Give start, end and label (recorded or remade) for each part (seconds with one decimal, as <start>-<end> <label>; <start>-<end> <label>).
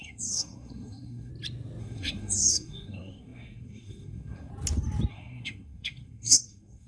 0.0-1.3 remade; 1.3-1.8 recorded; 1.8-4.5 remade; 4.5-5.1 recorded; 5.1-6.9 remade